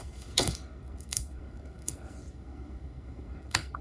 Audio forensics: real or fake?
fake